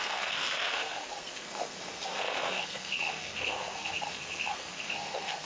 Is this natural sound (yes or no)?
no